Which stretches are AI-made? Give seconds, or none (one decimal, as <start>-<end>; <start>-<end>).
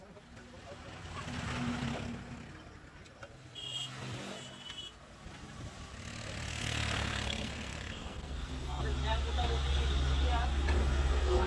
6.5-8.8; 10.8-11.5